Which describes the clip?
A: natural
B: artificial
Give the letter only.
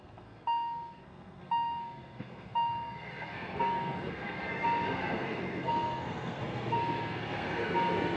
B